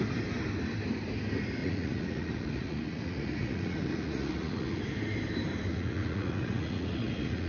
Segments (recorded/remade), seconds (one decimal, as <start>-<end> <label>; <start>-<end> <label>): 0.0-1.6 recorded; 1.6-4.8 remade; 4.8-5.7 recorded; 5.7-7.5 remade